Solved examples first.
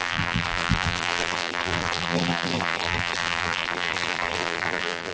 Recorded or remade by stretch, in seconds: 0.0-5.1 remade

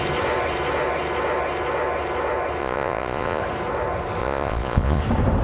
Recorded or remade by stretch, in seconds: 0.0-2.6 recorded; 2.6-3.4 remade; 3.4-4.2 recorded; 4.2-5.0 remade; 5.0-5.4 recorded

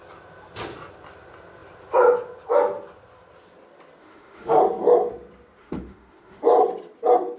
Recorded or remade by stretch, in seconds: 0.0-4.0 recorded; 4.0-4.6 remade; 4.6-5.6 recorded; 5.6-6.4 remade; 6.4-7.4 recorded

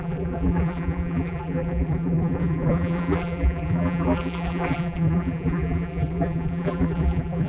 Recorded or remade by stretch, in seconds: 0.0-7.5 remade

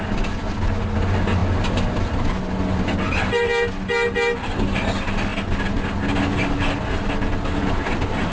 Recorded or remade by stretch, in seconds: 0.0-8.3 recorded